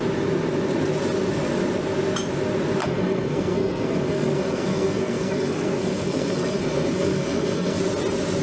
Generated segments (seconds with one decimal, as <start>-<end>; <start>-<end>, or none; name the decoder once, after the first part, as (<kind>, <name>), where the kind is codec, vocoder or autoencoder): 2.8-7.8 (codec, SNAC)